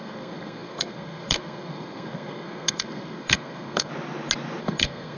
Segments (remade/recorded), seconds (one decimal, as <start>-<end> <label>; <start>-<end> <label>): 0.0-3.9 remade; 3.9-4.6 recorded; 4.6-5.2 remade